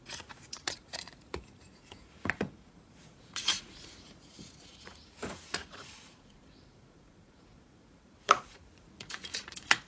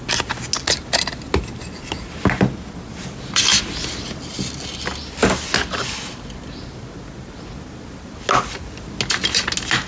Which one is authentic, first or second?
second